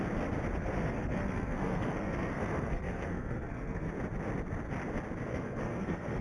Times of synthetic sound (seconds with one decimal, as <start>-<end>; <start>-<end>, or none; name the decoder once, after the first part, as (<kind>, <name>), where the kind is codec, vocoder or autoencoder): 0.6-3.9 (codec, SNAC); 5.3-6.2